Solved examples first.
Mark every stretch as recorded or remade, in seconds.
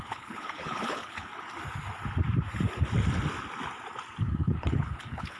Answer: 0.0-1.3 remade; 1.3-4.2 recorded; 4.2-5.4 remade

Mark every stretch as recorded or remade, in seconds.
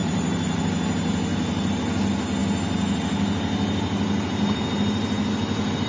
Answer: 0.0-0.6 remade; 0.6-1.3 recorded; 1.3-1.8 remade; 1.8-5.9 recorded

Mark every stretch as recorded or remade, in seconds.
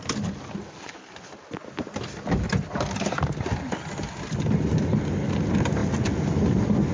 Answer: 0.0-6.9 recorded